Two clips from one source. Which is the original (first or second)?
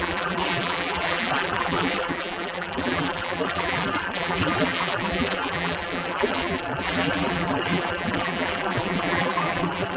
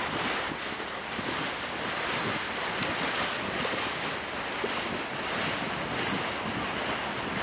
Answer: second